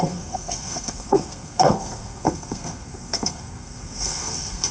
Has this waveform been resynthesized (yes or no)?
yes